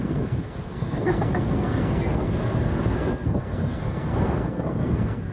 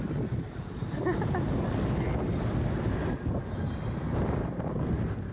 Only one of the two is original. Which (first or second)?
second